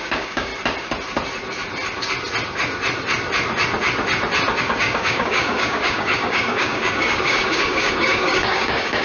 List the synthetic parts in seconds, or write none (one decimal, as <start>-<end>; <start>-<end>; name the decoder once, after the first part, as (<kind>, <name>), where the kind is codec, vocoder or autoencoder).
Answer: 0.0-0.5 (codec, DAC); 4.6-9.0